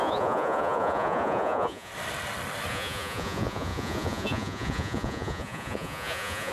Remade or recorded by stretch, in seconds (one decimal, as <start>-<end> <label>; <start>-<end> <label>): 0.0-1.9 remade; 1.9-2.7 recorded; 2.7-6.5 remade